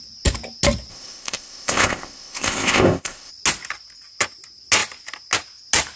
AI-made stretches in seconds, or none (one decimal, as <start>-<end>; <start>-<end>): 0.9-3.3